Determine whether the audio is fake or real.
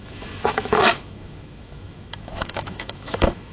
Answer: fake